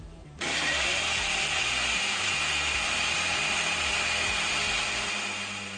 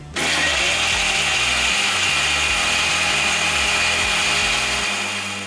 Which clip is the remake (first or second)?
first